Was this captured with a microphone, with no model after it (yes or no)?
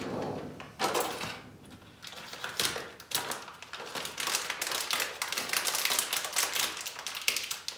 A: yes